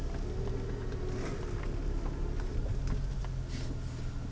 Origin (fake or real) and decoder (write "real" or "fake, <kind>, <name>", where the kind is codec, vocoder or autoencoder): real